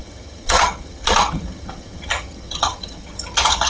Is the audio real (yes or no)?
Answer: no